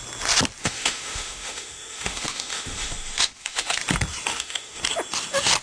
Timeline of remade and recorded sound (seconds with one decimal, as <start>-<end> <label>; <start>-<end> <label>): 0.0-0.6 recorded; 0.6-3.8 remade; 3.8-4.3 recorded; 4.3-4.8 remade; 4.8-5.6 recorded